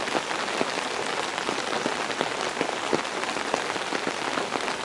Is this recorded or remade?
recorded